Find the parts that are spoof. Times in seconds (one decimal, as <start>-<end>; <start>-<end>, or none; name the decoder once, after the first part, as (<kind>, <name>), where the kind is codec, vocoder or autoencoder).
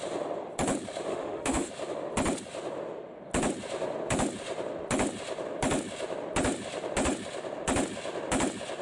1.1-1.7 (autoencoder, DAC-VAE)